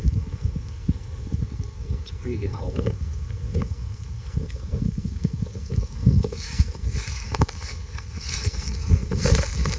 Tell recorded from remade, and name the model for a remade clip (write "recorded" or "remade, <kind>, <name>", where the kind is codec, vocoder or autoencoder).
remade, codec, SNAC